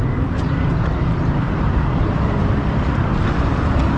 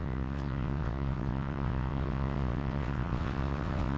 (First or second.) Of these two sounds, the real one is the first